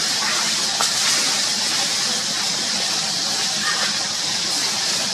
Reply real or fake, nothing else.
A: real